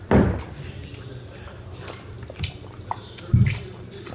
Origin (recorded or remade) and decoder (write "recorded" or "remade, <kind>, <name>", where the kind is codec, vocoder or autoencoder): recorded